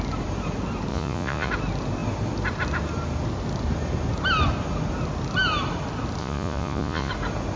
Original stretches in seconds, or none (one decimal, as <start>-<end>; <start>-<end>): 0.0-0.9; 1.5-6.2; 7.1-7.6